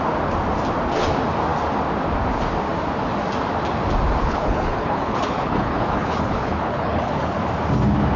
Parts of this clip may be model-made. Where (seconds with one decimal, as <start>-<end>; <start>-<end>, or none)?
4.2-7.4